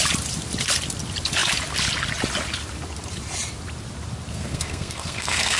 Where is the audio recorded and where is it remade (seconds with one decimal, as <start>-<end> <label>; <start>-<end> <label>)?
0.0-4.3 recorded; 4.3-5.6 remade